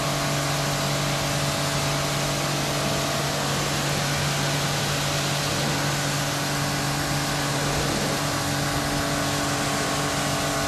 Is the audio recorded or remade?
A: recorded